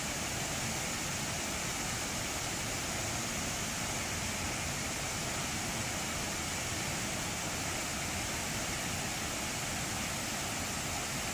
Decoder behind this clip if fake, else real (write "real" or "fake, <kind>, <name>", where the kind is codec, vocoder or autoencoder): real